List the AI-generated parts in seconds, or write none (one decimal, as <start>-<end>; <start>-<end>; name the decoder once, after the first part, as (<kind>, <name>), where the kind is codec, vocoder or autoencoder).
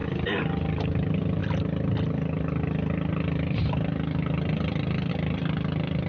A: none